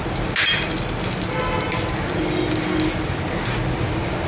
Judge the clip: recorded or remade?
recorded